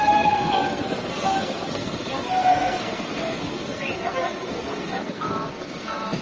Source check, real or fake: fake